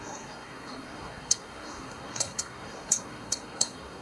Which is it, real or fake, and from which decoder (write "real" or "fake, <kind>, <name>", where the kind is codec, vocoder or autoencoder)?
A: fake, codec, SNAC